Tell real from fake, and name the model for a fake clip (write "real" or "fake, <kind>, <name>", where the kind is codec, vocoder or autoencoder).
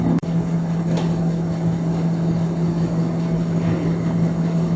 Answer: fake, codec, DAC